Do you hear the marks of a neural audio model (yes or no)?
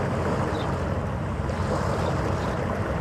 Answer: no